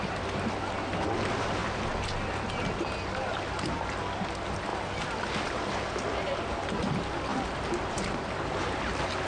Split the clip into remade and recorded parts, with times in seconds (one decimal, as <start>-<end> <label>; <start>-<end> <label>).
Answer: 0.0-9.3 recorded